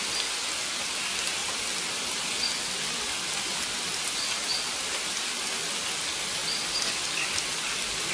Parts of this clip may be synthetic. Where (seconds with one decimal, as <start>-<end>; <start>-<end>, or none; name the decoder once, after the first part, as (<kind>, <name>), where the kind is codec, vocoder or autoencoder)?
none